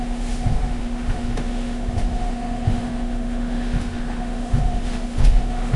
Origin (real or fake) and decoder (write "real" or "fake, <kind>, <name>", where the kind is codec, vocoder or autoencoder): fake, autoencoder, DAC-VAE